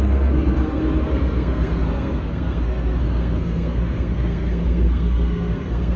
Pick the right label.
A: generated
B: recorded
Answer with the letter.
A